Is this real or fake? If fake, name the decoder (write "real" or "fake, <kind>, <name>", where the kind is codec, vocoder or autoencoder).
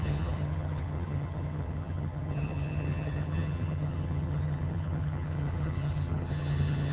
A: fake, vocoder, HiFi-GAN